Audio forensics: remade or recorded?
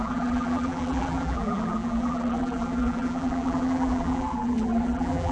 remade